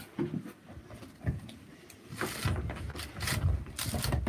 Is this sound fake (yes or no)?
no